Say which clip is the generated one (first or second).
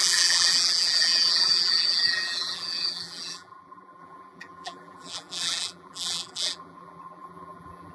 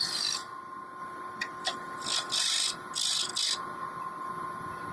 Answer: first